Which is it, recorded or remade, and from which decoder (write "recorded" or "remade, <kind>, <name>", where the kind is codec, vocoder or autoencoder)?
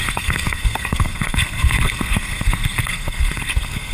remade, codec, SNAC